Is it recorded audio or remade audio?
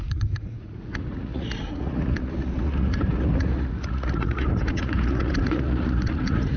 remade